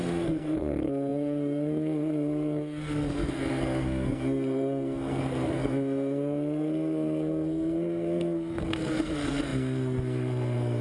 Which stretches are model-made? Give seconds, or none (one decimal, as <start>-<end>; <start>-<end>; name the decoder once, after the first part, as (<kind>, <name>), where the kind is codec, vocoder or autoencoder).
0.0-10.8 (codec, SNAC)